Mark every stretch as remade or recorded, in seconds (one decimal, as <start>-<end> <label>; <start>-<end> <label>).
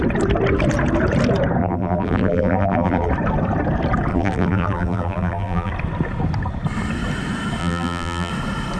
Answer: 0.0-1.6 recorded; 1.6-3.1 remade; 3.1-4.1 recorded; 4.1-5.7 remade; 5.7-7.6 recorded; 7.6-8.3 remade; 8.3-8.8 recorded